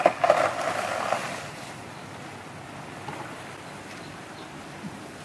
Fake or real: real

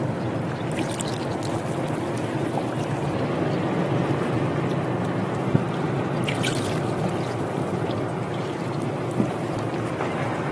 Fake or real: real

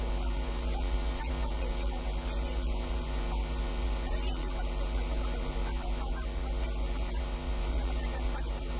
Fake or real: fake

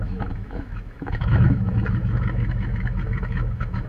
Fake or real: fake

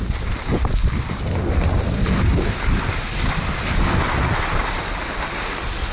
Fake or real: real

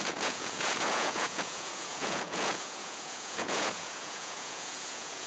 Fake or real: fake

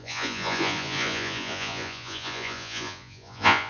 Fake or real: fake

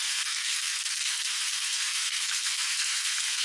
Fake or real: fake